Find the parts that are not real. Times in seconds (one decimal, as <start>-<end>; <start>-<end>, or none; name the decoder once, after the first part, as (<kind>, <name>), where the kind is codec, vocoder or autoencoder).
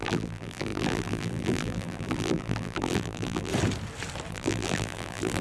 0.0-3.5 (vocoder, BigVGAN v2); 4.3-5.4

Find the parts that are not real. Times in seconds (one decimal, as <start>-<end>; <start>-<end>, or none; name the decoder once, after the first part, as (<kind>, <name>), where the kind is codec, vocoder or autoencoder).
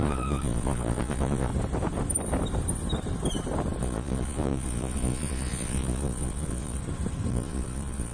0.0-1.5 (vocoder, Vocos); 3.8-6.8; 7.3-8.1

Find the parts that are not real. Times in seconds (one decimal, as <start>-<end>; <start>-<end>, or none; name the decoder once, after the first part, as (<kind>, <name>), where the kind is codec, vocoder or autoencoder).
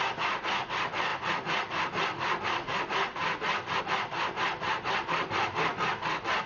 none